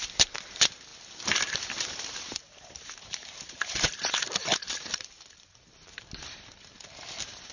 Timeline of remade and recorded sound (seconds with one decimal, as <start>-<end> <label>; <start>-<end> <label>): 0.0-0.9 remade; 0.9-1.8 recorded; 1.8-7.5 remade